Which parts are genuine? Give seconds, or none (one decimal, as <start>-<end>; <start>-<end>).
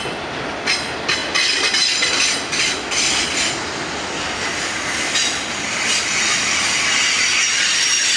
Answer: 0.0-8.2